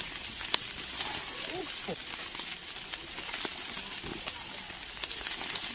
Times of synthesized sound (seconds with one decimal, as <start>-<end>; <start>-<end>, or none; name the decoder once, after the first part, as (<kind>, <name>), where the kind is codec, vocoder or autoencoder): none